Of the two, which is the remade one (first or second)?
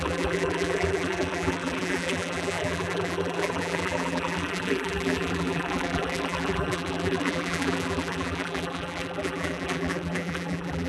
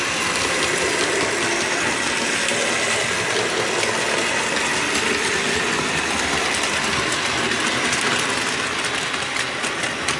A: first